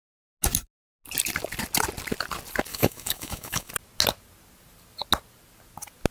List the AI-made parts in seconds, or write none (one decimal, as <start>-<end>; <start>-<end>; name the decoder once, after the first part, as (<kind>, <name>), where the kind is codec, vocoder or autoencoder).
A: 2.7-3.7 (autoencoder, DAC-VAE)

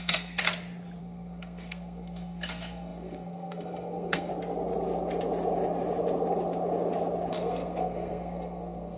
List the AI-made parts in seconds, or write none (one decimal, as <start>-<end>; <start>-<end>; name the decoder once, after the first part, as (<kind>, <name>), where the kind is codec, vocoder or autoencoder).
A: 0.0-0.4 (codec, SNAC); 1.0-4.3; 7.3-9.0

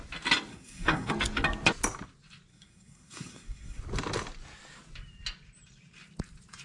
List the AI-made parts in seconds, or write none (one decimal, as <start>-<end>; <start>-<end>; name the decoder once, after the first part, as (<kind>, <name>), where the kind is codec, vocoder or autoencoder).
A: 0.5-1.1 (codec, SNAC); 2.5-3.8

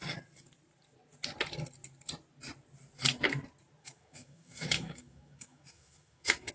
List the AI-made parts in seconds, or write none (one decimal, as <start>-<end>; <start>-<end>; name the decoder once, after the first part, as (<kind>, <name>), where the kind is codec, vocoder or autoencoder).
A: 3.8-6.5 (autoencoder, DAC-VAE)

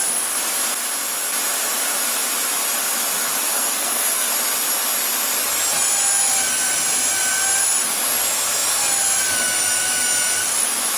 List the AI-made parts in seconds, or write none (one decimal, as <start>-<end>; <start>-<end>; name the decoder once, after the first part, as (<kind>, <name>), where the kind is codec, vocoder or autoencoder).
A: 3.5-4.3 (codec, SNAC)

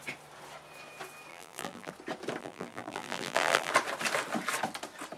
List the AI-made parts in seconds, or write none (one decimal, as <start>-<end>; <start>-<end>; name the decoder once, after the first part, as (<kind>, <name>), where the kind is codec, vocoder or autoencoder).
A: 1.3-1.9 (vocoder, BigVGAN v2); 2.4-3.7

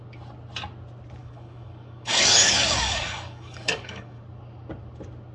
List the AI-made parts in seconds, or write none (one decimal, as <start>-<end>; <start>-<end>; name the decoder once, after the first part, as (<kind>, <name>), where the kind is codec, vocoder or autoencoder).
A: 1.2-4.2 (codec, DAC)

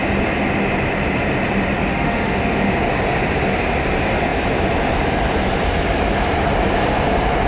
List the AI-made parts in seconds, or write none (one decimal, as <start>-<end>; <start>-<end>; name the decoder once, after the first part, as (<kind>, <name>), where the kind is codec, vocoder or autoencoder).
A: 1.9-2.7 (autoencoder, DAC-VAE)